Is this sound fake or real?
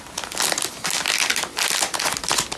real